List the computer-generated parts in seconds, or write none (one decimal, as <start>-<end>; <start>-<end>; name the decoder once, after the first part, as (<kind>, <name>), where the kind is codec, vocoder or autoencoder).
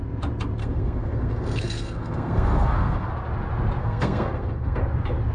0.6-3.1 (codec, SNAC); 3.8-4.8